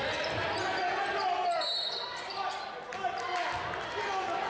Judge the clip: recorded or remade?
recorded